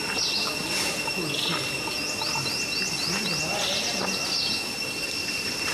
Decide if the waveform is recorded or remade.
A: recorded